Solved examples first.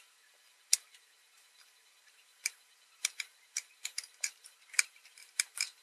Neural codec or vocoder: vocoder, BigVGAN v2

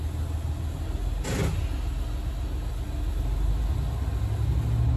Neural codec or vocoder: none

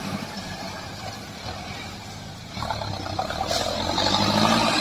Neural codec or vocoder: vocoder, BigVGAN v2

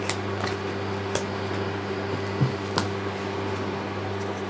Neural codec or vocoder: none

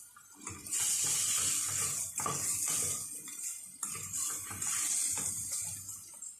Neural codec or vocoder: none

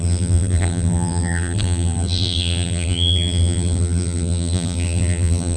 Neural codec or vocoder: vocoder, BigVGAN v2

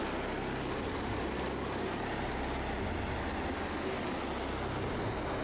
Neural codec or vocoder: none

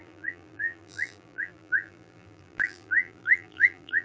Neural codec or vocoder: vocoder, BigVGAN v2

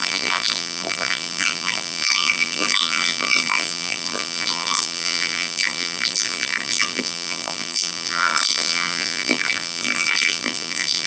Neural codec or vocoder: vocoder, BigVGAN v2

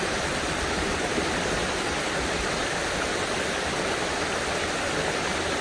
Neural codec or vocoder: none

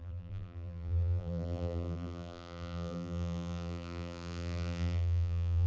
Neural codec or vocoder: vocoder, BigVGAN v2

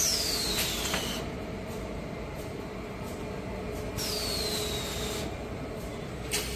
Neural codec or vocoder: none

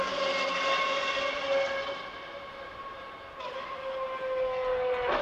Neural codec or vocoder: none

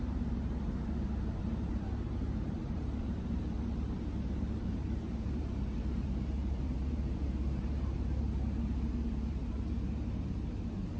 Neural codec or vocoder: vocoder, BigVGAN v2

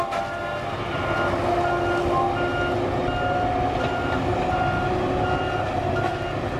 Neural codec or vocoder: none